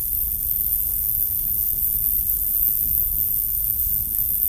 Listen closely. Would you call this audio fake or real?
fake